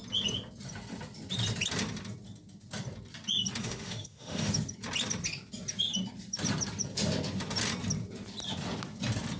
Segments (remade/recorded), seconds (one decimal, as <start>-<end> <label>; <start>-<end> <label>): 0.0-3.6 recorded; 3.6-4.5 remade; 4.5-9.4 recorded